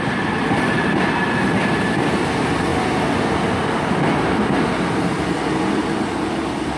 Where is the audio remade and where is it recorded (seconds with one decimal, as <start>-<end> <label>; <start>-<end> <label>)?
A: 0.0-6.8 recorded